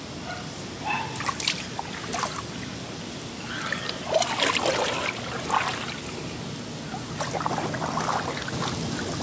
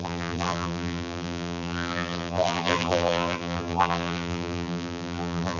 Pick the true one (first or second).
first